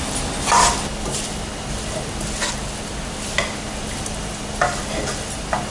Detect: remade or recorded recorded